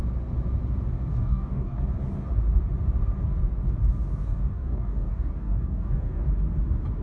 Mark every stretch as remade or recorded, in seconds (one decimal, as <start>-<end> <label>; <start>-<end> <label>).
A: 0.0-1.1 recorded; 1.1-1.8 remade; 1.8-4.1 recorded; 4.1-6.3 remade; 6.3-7.0 recorded